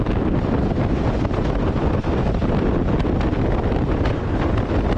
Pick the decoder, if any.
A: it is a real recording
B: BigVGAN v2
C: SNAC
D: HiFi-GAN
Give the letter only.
A